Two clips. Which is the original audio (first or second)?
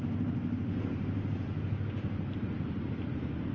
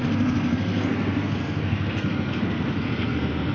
first